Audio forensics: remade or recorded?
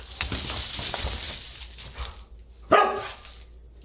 recorded